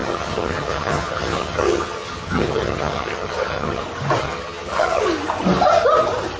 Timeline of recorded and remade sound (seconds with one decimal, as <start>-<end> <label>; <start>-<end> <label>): 0.0-3.8 remade; 3.8-4.2 recorded; 4.2-5.0 remade; 5.0-6.4 recorded

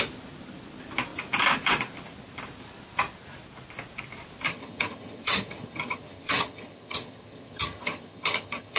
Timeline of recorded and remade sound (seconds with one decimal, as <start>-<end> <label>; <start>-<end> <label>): 0.0-4.5 recorded; 4.5-8.8 remade

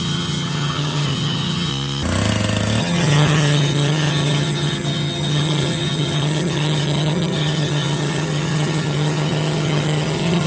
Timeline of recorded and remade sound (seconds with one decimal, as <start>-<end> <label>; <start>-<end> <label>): 0.0-1.7 remade; 1.7-2.8 recorded; 2.8-10.5 remade

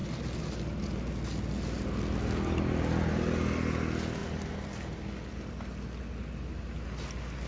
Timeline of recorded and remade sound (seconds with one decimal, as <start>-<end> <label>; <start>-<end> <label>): 0.0-7.5 recorded

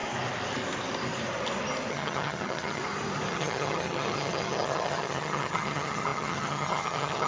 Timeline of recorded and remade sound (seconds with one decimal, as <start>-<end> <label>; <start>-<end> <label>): 0.0-1.9 recorded; 1.9-2.8 remade; 2.8-3.3 recorded; 3.3-7.3 remade

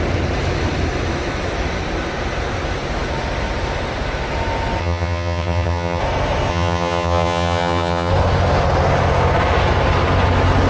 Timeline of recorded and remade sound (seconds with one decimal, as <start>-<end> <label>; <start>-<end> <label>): 0.0-4.8 recorded; 4.8-6.0 remade; 6.0-6.5 recorded; 6.5-8.1 remade; 8.1-10.7 recorded